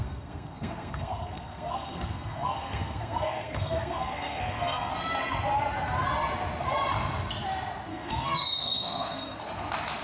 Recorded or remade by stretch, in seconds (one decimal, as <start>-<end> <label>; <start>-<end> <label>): 0.0-4.9 remade; 4.9-7.9 recorded; 7.9-9.4 remade; 9.4-10.0 recorded